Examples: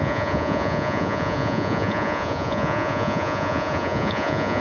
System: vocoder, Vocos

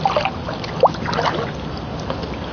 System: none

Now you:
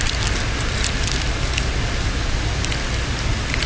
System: none